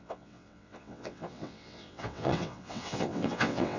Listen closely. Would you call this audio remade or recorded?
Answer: remade